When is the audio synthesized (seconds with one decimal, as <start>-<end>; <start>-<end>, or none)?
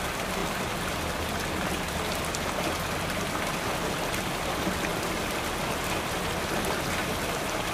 none